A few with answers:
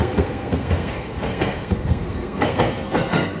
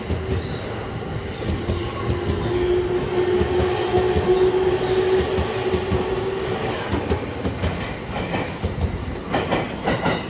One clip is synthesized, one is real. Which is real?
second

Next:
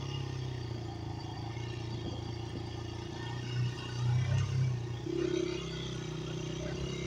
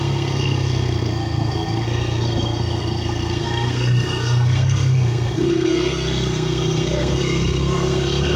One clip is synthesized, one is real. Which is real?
first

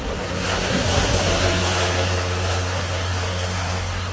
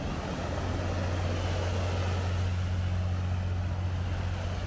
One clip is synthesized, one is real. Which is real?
second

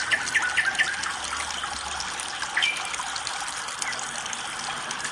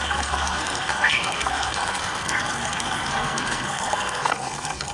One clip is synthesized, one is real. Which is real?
first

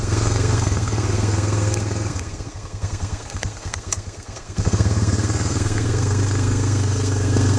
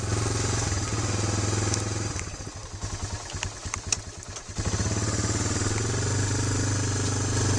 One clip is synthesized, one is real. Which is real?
second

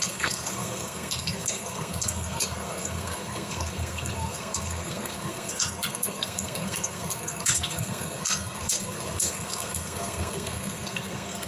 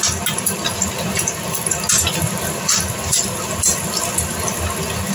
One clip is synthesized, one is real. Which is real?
second